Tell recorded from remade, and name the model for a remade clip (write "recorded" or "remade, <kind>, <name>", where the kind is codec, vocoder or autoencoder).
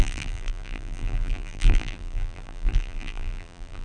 remade, vocoder, BigVGAN v2